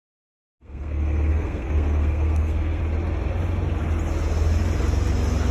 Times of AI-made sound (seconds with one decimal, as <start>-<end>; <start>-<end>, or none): 0.4-2.8